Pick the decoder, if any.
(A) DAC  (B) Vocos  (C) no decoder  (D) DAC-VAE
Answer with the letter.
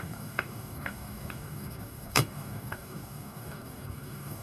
A